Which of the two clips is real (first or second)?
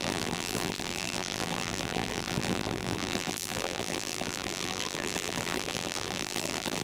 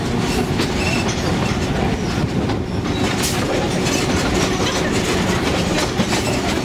second